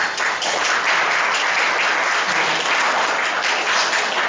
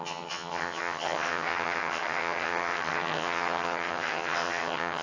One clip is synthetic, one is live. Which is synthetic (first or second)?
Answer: second